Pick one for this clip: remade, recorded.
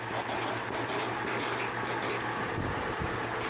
recorded